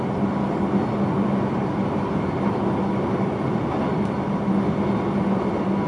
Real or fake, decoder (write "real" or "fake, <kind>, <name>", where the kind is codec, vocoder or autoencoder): real